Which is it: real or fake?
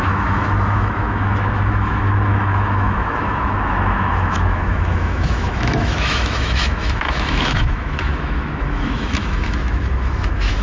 fake